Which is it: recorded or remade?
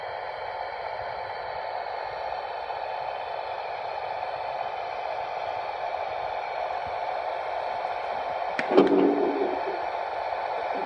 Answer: recorded